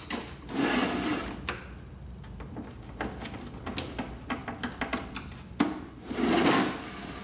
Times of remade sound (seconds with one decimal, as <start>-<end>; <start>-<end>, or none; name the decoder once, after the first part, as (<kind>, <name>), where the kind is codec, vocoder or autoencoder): none